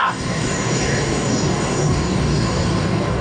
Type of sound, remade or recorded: remade